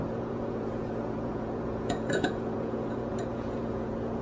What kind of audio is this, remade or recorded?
remade